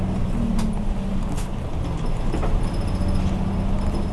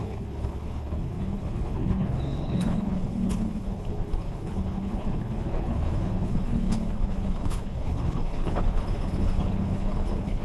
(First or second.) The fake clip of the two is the second